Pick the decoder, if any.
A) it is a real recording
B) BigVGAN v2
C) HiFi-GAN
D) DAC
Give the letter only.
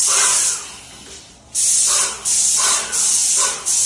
A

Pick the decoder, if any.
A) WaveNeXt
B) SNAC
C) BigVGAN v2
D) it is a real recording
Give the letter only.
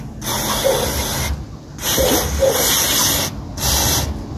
D